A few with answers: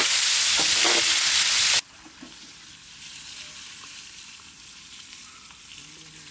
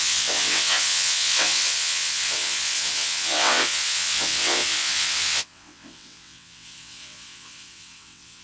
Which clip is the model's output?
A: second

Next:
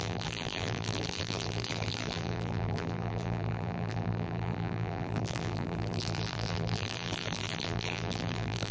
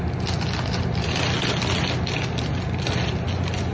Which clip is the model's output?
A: first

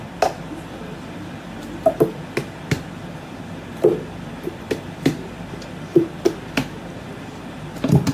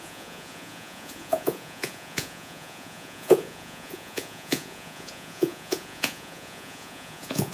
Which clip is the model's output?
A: second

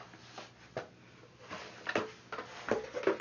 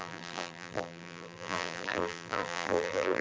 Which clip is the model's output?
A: second